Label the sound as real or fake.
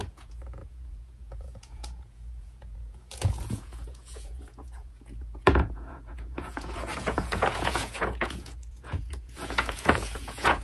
fake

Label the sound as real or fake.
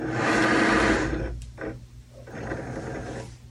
real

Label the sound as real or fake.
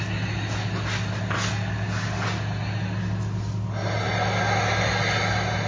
real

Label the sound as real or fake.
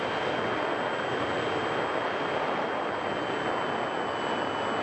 real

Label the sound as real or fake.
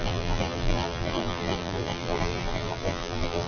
fake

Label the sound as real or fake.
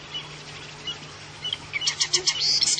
real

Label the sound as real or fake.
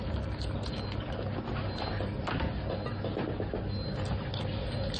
real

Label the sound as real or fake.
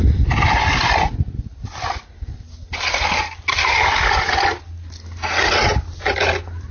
real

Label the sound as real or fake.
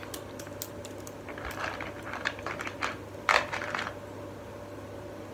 real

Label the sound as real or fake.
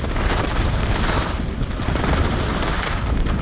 real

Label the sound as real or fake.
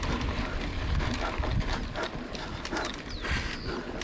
real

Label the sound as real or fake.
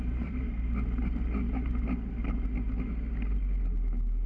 real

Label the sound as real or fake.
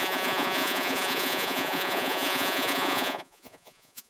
fake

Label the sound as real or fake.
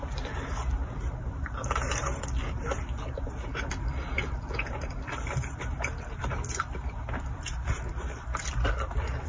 fake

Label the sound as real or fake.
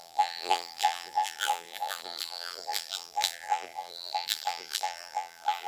fake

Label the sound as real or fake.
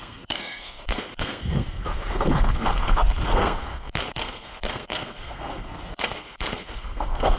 fake